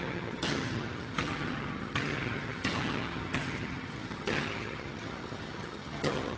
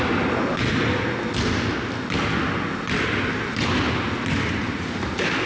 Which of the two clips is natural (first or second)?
second